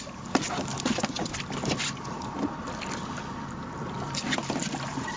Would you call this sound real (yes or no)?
yes